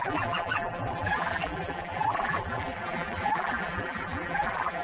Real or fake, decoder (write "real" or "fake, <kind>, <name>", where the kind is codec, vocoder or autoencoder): fake, vocoder, BigVGAN v2